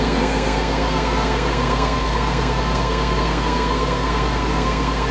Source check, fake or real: fake